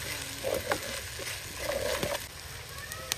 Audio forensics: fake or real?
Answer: real